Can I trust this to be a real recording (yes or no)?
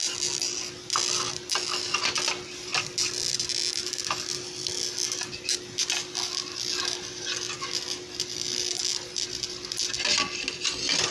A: yes